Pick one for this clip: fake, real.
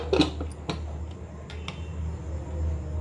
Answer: real